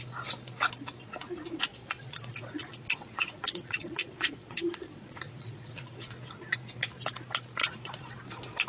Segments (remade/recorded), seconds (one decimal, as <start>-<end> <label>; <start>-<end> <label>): 0.0-1.7 recorded; 1.7-6.0 remade; 6.0-7.6 recorded; 7.6-8.2 remade; 8.2-8.7 recorded